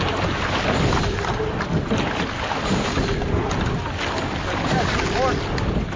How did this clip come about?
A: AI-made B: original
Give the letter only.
B